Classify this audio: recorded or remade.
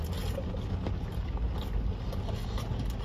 recorded